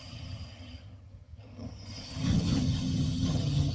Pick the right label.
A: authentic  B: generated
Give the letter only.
B